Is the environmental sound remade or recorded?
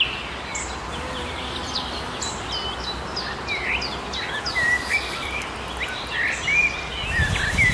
recorded